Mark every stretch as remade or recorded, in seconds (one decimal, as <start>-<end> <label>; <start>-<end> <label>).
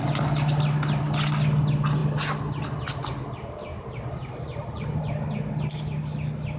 0.0-3.7 recorded; 3.7-5.3 remade; 5.3-6.6 recorded